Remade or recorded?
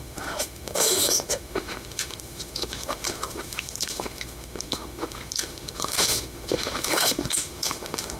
remade